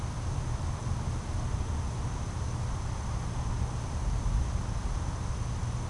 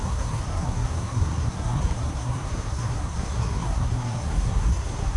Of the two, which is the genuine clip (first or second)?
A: first